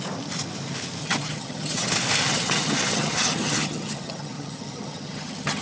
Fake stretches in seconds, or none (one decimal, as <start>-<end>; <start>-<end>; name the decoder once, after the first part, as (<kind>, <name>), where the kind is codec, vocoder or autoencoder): 1.0-1.9 (vocoder, HiFi-GAN); 2.3-5.6